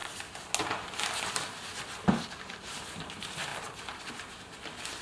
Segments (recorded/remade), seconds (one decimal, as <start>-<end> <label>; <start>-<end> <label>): 0.0-3.5 recorded; 3.5-4.1 remade; 4.1-5.0 recorded